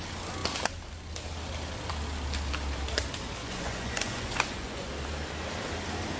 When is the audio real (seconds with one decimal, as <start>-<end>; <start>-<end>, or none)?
0.0-3.4; 4.9-6.2